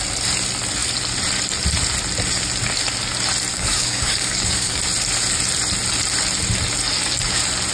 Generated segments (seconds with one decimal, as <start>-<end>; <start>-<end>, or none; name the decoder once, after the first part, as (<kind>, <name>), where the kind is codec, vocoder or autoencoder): 3.5-4.8 (codec, DAC)